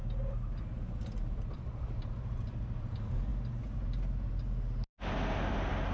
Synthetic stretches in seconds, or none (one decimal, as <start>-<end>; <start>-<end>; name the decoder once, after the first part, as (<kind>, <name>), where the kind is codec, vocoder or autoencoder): none